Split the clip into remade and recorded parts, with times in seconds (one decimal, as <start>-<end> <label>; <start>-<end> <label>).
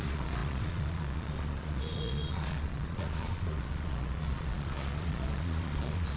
0.0-6.2 remade